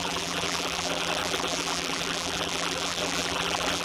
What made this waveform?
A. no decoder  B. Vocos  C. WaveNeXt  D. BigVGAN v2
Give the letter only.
D